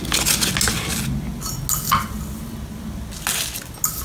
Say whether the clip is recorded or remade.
recorded